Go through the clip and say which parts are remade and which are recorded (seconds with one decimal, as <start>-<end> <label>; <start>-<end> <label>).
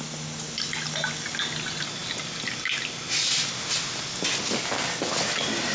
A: 0.0-5.7 recorded